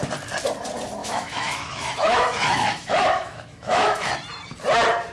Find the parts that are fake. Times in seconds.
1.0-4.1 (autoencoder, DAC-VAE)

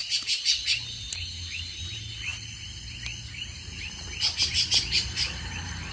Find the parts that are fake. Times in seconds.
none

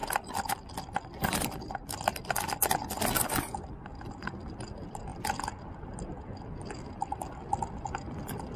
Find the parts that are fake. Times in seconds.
none

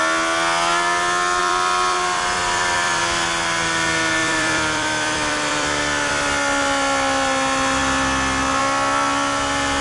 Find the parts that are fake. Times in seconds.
1.4-3.0 (vocoder, BigVGAN v2); 4.2-6.1

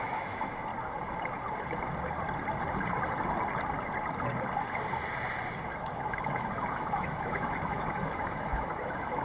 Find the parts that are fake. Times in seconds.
0.0-0.7 (autoencoder, DAC-VAE); 5.6-9.2